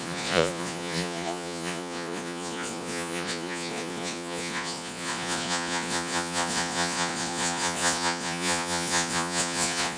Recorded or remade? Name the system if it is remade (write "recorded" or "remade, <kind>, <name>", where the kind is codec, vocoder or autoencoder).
remade, vocoder, Vocos